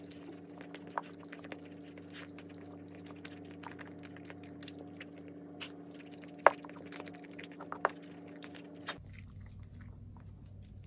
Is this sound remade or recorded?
recorded